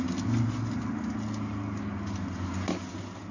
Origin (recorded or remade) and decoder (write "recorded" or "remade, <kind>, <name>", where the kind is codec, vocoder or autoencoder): recorded